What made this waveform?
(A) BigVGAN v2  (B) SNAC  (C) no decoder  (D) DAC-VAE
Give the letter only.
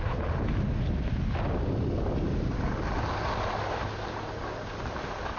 C